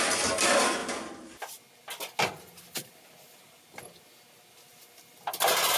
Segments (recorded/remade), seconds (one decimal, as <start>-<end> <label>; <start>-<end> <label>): 0.0-5.8 recorded